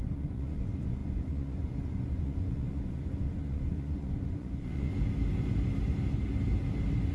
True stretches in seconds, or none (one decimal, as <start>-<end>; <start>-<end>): 4.9-7.1